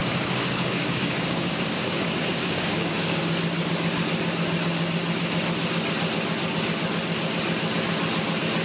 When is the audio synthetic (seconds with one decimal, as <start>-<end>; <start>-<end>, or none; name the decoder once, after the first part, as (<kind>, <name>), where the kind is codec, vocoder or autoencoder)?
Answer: 0.0-3.2 (codec, DAC)